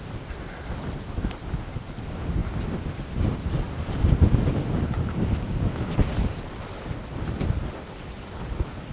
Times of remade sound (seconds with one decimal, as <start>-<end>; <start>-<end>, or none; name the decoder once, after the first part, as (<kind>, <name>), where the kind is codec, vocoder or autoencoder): none